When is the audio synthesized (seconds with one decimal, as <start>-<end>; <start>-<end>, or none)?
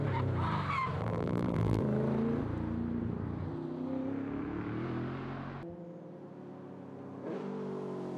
1.0-1.8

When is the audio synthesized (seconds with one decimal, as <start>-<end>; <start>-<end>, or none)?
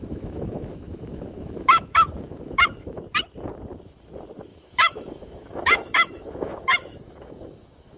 0.0-3.0; 4.5-8.0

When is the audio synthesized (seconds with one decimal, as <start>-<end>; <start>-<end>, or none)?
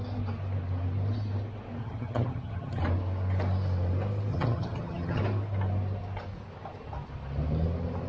1.8-2.8; 4.3-5.2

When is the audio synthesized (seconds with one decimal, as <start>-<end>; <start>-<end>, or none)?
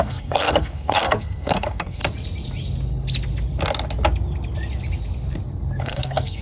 0.0-2.0; 5.8-6.4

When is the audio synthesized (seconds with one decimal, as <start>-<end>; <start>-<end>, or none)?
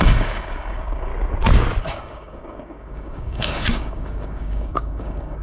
0.0-1.1; 1.8-5.4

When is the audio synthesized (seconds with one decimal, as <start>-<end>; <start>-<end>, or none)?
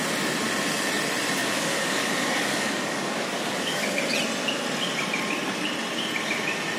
1.4-4.0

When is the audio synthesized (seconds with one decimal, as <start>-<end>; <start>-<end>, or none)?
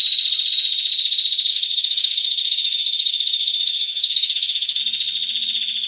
1.5-4.8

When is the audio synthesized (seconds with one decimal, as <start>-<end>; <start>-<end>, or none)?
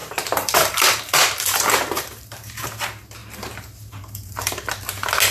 0.0-2.6; 3.2-4.7